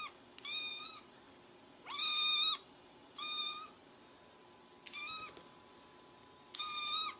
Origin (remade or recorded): recorded